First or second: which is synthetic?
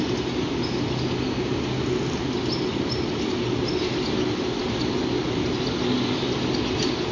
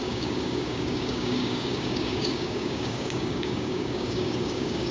second